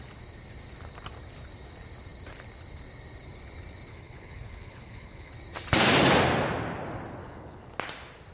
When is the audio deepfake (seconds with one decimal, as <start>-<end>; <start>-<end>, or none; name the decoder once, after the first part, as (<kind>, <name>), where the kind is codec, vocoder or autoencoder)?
3.9-5.3 (codec, HILCodec); 7.2-7.7

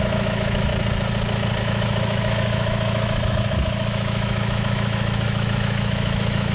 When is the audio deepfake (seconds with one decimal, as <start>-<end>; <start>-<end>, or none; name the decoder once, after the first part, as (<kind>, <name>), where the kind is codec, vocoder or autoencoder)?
0.0-0.7 (autoencoder, DAC-VAE); 1.6-6.5

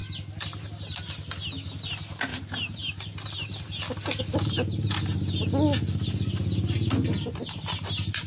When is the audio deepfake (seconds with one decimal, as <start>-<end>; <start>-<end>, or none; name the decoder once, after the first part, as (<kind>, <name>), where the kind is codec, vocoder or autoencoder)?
2.3-4.2 (vocoder, BigVGAN v2)

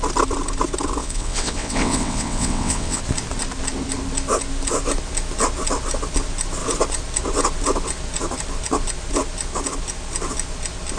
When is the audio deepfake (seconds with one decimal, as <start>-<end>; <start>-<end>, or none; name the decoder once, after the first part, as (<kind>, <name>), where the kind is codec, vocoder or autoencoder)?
1.0-3.0 (vocoder, WaveNeXt)

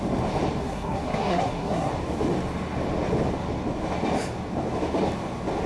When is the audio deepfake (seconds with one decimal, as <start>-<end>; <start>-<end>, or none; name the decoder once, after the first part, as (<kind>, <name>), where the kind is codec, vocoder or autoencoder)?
0.6-1.9 (codec, SNAC)

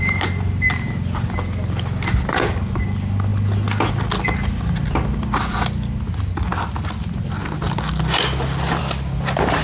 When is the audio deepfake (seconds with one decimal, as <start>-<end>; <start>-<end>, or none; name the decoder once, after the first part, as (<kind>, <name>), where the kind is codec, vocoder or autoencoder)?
none

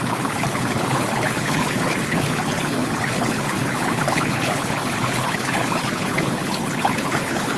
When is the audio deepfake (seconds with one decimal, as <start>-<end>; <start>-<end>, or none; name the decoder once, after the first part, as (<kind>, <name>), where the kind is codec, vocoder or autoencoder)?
0.0-7.6 (codec, HILCodec)

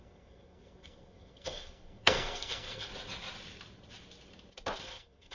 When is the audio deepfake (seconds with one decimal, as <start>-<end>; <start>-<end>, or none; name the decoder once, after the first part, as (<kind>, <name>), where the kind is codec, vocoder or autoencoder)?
0.0-2.9 (codec, SNAC); 4.8-5.3